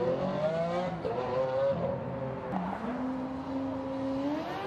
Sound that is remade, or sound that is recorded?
recorded